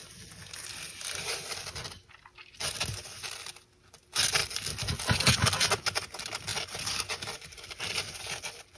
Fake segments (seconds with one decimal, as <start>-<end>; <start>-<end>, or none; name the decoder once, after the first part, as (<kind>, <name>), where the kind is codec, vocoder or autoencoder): none